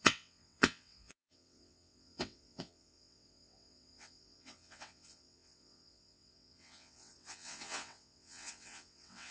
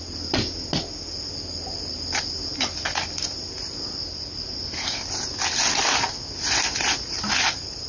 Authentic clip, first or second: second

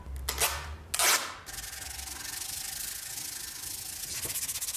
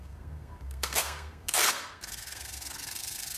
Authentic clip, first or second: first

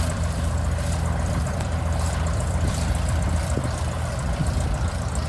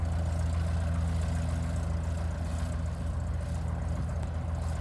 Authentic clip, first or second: second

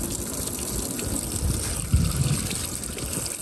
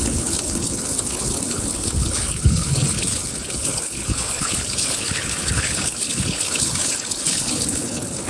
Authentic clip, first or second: first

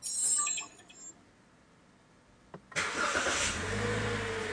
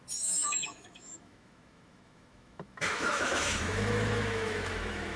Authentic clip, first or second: first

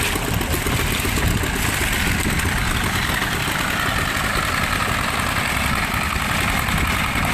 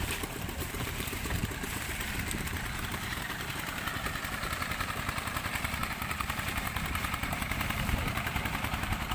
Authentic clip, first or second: first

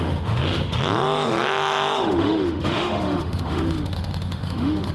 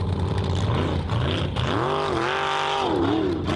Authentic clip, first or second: second